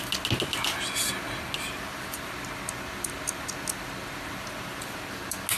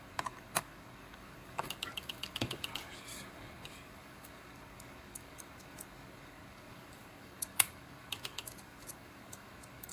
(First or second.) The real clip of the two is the first